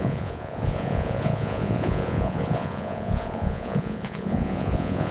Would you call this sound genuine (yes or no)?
no